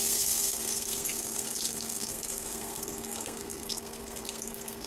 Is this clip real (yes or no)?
no